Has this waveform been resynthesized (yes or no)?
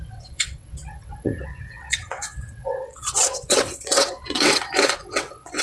yes